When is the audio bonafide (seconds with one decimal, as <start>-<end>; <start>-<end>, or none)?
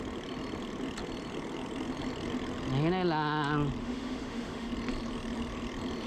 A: 0.0-3.8; 4.7-6.1